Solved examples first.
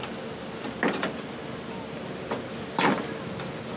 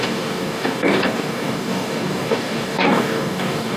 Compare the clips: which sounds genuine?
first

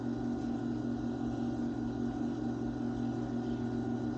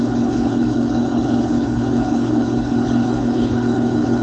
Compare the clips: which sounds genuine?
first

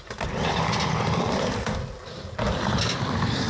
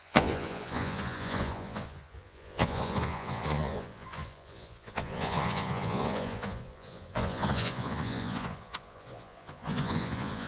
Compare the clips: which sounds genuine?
first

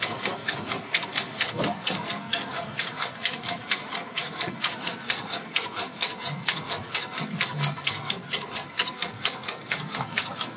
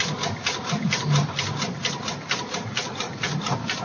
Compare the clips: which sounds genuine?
second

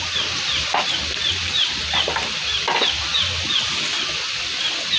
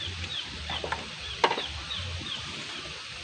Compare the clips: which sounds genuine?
first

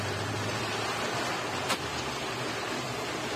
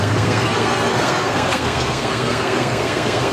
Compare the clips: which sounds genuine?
first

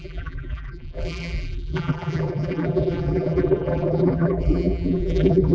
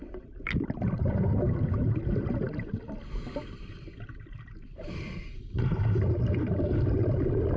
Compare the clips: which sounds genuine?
second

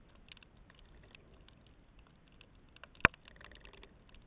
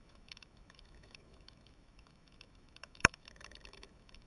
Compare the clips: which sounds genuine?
first